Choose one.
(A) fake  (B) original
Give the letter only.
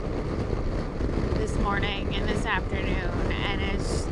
B